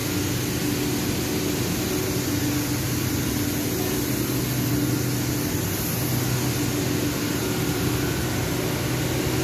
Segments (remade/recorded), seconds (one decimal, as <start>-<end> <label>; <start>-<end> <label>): 0.0-7.0 recorded; 7.0-8.6 remade; 8.6-9.4 recorded